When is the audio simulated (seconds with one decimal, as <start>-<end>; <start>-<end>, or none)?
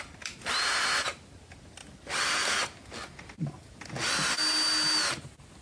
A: none